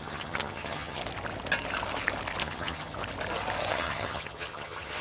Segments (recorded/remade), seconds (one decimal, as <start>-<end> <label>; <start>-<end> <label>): 0.0-1.0 remade; 1.0-2.4 recorded; 2.4-3.0 remade; 3.0-3.7 recorded; 3.7-5.0 remade